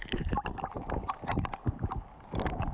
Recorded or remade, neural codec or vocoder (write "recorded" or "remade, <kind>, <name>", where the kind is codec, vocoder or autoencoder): recorded